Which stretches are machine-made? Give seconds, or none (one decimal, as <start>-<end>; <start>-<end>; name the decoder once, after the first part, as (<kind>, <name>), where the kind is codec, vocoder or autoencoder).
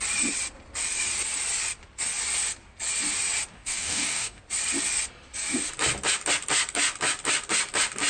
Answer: 3.5-4.4 (codec, DAC)